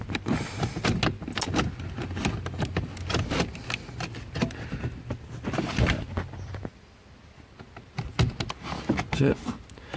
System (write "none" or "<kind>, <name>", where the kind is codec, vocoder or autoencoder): none